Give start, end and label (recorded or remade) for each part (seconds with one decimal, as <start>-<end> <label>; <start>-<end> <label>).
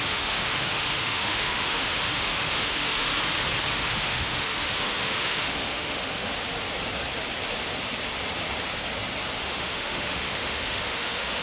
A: 0.0-3.1 remade; 3.1-3.7 recorded; 3.7-6.3 remade; 6.3-9.4 recorded; 9.4-11.4 remade